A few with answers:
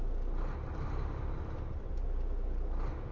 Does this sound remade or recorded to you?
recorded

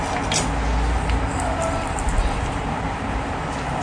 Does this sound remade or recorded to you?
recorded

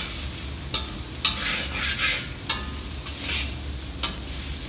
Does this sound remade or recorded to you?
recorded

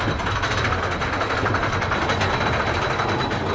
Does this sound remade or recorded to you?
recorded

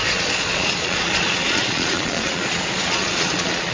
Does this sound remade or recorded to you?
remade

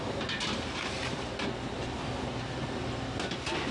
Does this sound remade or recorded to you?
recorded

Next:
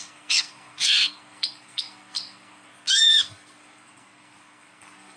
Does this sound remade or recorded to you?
remade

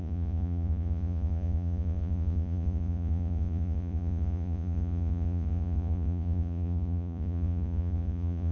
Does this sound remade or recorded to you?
remade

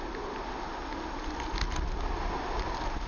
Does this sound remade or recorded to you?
recorded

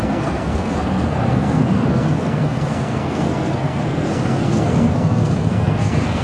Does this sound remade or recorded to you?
remade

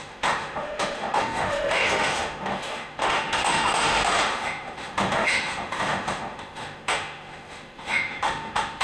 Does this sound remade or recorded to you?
remade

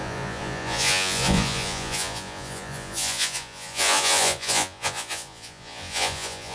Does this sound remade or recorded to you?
remade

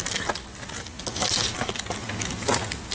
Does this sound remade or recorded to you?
recorded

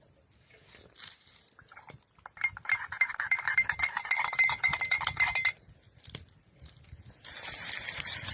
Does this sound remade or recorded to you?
recorded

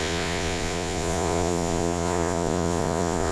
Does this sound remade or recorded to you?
remade